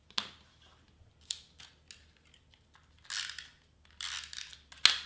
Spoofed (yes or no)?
no